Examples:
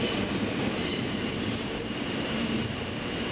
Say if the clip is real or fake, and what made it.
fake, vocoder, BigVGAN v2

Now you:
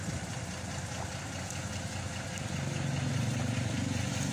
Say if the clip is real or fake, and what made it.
real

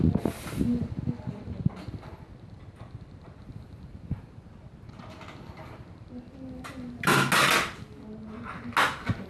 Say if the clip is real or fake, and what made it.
real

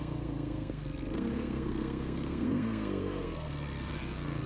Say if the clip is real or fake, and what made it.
fake, codec, SNAC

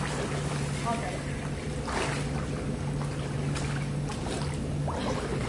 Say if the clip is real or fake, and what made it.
real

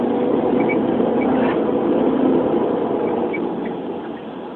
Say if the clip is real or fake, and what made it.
real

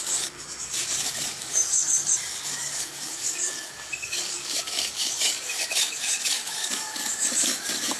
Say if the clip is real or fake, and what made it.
fake, codec, DAC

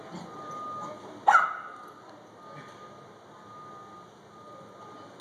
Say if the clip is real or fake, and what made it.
real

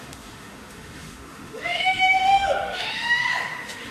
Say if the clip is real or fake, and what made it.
fake, autoencoder, DAC-VAE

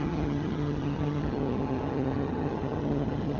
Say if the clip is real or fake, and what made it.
fake, vocoder, HiFi-GAN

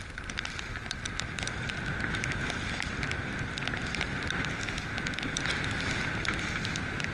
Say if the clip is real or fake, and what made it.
real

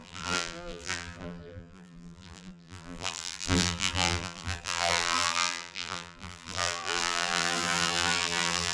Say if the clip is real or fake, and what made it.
fake, vocoder, BigVGAN v2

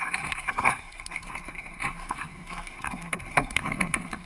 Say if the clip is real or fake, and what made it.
fake, codec, SNAC